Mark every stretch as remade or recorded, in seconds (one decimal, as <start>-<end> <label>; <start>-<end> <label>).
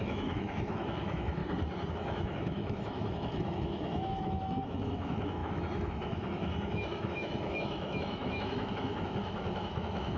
0.0-1.4 remade; 1.4-1.9 recorded; 1.9-10.2 remade